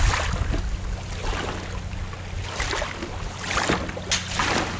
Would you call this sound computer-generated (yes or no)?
no